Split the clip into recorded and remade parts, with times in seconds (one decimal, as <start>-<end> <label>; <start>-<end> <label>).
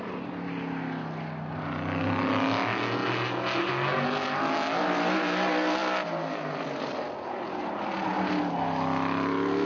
0.0-9.7 recorded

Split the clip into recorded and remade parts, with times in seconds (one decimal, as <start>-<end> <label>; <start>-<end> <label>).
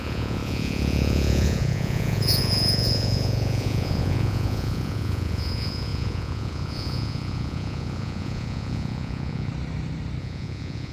0.0-9.5 remade; 9.5-10.2 recorded; 10.2-10.9 remade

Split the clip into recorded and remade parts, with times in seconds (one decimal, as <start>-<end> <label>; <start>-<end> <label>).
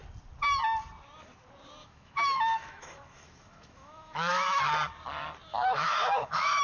0.0-1.8 recorded; 1.8-4.6 remade; 4.6-5.5 recorded; 5.5-6.6 remade